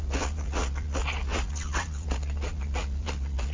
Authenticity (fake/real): fake